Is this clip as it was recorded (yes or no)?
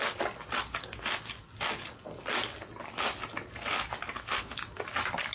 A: yes